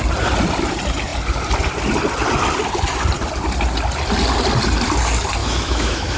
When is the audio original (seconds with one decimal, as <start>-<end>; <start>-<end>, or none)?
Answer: 0.0-5.4